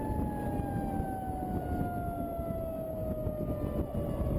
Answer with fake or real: real